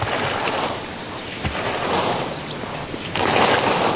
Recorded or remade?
recorded